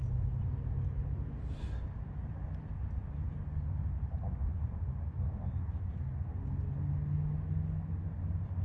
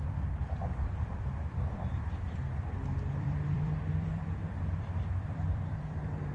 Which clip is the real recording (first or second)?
first